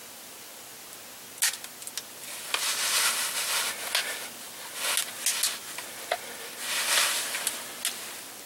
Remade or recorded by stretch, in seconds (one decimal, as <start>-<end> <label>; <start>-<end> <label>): 0.0-8.5 recorded

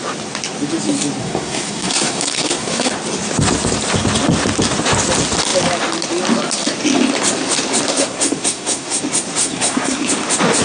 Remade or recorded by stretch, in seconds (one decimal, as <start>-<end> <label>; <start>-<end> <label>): 0.0-1.2 recorded; 1.2-2.9 remade; 2.9-7.9 recorded; 7.9-9.0 remade; 9.0-9.4 recorded; 9.4-10.1 remade; 10.1-10.6 recorded

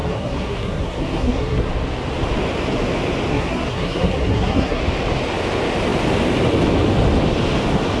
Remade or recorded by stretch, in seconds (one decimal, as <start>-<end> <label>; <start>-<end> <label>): 0.0-1.7 remade; 1.7-3.3 recorded; 3.3-4.8 remade; 4.8-8.0 recorded

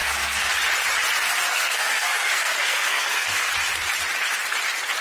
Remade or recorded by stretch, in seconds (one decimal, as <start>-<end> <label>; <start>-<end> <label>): 0.0-0.5 remade; 0.5-1.5 recorded; 1.5-3.5 remade; 3.5-5.0 recorded

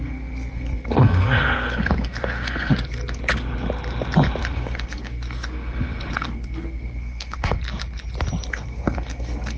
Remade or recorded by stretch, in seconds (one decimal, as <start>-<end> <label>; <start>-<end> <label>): 0.0-2.7 remade; 2.7-4.4 recorded; 4.4-7.6 remade; 7.6-8.5 recorded; 8.5-9.6 remade